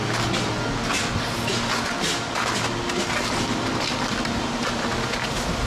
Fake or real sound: real